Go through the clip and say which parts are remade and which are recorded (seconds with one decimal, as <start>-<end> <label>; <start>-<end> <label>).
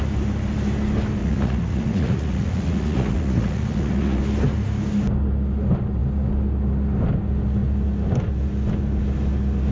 0.0-1.2 recorded; 1.2-4.2 remade; 4.2-9.7 recorded